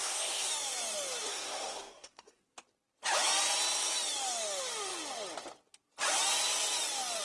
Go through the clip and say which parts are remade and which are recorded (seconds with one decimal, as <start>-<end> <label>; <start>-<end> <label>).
0.0-0.5 remade; 0.5-1.3 recorded; 1.3-2.4 remade; 2.4-7.2 recorded